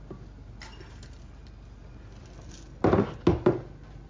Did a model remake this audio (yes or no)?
no